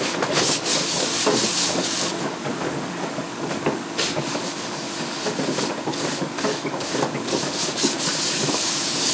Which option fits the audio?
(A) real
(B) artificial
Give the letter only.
B